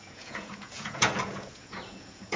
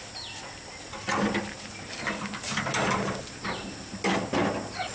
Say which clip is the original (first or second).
second